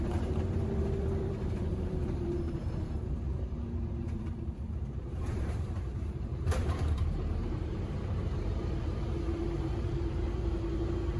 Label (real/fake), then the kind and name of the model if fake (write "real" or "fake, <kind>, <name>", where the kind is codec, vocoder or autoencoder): fake, vocoder, BigVGAN v2